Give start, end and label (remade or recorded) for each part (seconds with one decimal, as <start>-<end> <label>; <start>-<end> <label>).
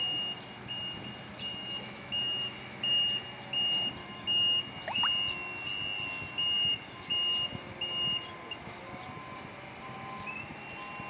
0.0-1.5 recorded; 1.5-2.9 remade; 2.9-4.0 recorded; 4.0-4.6 remade; 4.6-11.1 recorded